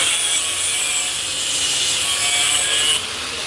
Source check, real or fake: real